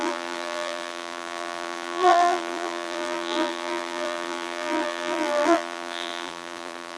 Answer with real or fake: fake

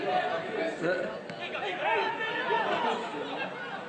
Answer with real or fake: real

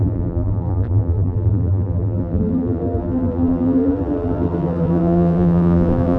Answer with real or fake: fake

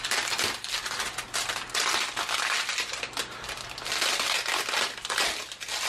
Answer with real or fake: real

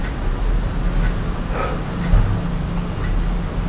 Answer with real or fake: real